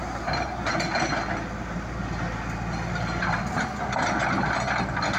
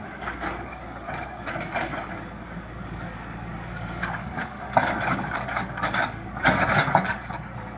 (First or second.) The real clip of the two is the first